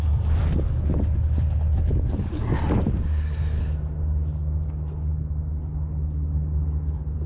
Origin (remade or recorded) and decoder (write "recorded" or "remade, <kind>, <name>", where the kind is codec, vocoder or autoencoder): recorded